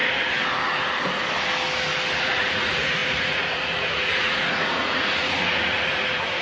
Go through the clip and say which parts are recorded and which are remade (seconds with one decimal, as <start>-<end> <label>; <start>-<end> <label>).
0.0-2.2 recorded; 2.2-6.4 remade